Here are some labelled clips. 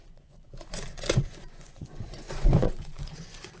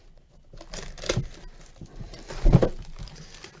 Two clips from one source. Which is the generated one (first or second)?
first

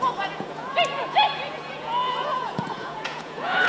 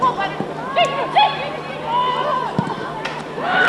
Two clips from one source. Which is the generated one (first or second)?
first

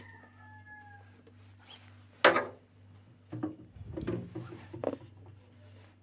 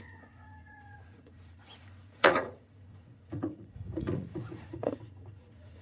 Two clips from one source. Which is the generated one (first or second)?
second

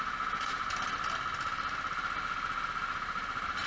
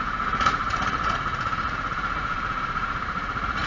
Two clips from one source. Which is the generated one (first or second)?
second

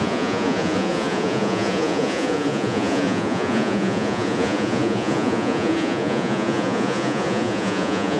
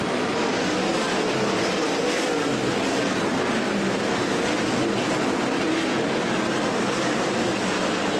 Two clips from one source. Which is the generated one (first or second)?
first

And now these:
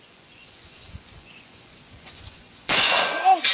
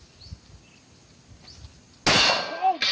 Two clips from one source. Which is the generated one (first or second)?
first